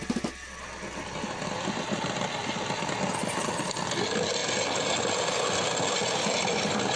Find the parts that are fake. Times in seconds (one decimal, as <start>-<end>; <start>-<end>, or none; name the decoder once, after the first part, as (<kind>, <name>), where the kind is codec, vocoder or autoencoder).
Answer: none